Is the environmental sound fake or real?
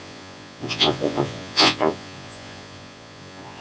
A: fake